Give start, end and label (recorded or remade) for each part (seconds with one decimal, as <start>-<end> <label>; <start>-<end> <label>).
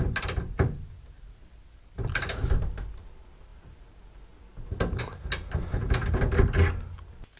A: 0.0-7.4 recorded